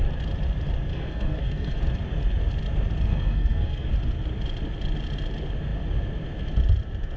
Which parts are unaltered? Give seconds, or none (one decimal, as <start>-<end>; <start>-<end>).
0.0-0.9; 1.8-3.1; 3.9-7.2